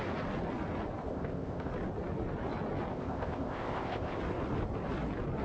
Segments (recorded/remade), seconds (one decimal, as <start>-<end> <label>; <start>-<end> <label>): 0.0-1.1 recorded; 1.1-1.7 remade; 1.7-2.9 recorded; 2.9-4.2 remade; 4.2-5.4 recorded